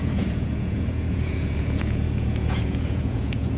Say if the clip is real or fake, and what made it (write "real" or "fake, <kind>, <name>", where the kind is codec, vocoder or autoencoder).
fake, vocoder, Vocos